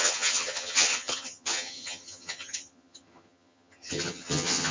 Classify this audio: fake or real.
fake